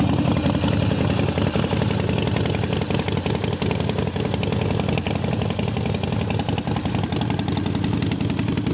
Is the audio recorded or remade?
recorded